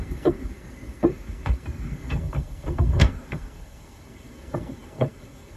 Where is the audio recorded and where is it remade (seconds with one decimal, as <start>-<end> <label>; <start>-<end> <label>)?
0.0-5.6 remade